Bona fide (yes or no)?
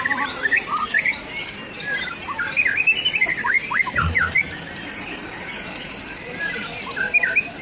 yes